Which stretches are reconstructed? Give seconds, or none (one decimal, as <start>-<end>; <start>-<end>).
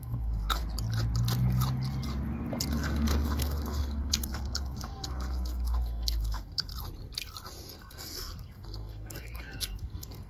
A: 0.0-0.6; 2.7-6.7; 7.8-10.3